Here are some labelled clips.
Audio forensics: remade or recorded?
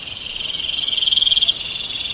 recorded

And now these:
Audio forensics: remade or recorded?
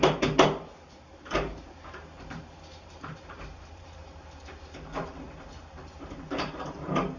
remade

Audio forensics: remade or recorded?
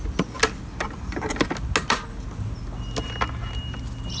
recorded